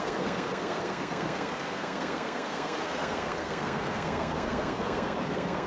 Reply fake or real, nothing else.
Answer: fake